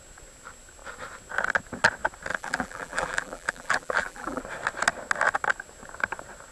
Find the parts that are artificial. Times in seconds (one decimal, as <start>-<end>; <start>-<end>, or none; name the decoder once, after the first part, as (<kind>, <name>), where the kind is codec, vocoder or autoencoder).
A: 2.3-4.4 (vocoder, BigVGAN v2)